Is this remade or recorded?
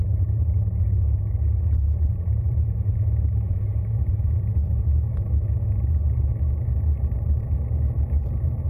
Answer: remade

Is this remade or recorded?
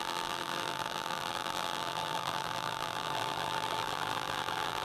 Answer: remade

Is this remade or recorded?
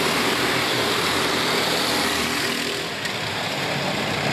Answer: remade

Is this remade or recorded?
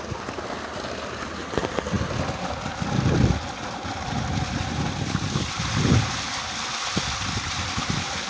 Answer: recorded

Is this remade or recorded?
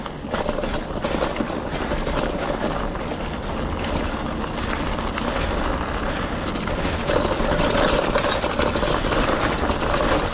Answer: recorded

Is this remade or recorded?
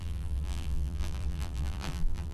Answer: remade